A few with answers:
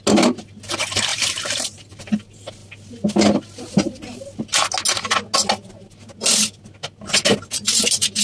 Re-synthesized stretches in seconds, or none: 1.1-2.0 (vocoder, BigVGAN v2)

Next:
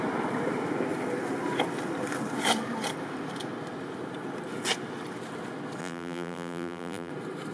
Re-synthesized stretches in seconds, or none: 5.8-7.1 (vocoder, BigVGAN v2)

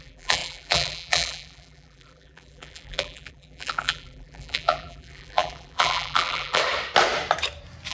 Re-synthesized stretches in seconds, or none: 0.0-6.6 (vocoder, BigVGAN v2)

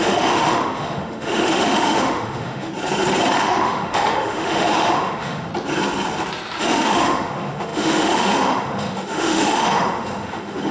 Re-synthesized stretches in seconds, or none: 0.0-2.7 (autoencoder, DAC-VAE); 3.4-5.5; 6.6-10.7

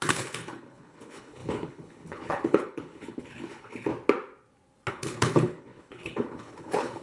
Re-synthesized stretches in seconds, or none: 0.0-3.9 (codec, HILCodec); 4.9-7.0

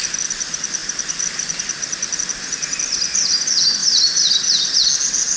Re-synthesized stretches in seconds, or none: 3.8-4.6 (vocoder, BigVGAN v2)